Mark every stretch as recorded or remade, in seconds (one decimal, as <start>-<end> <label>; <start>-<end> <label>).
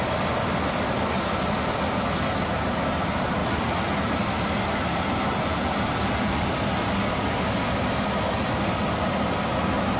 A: 0.0-10.0 recorded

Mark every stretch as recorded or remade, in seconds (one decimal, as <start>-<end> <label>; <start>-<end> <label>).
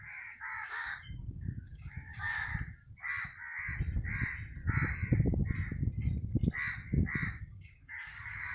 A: 0.0-2.5 remade; 2.5-7.4 recorded; 7.4-8.5 remade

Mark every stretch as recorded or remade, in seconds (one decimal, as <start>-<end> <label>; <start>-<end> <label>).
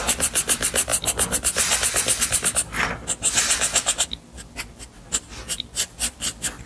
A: 0.0-6.7 recorded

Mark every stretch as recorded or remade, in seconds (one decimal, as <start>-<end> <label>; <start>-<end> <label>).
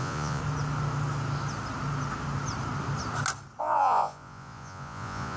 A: 0.0-0.4 remade; 0.4-3.6 recorded; 3.6-5.4 remade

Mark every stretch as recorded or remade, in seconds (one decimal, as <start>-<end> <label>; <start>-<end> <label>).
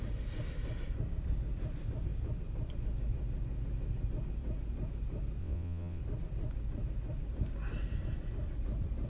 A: 0.0-5.4 recorded; 5.4-6.0 remade; 6.0-9.1 recorded